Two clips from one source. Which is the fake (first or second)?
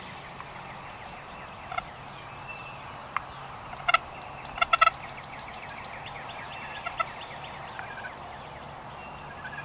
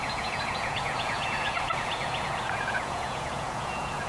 second